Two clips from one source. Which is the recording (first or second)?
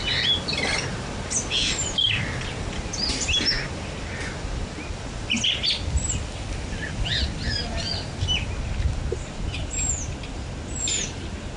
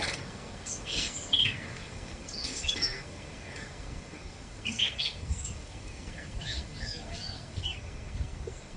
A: first